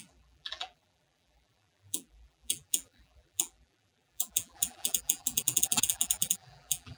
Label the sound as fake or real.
fake